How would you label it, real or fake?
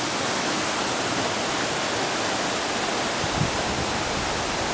real